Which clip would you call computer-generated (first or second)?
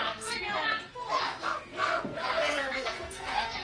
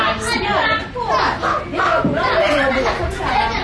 first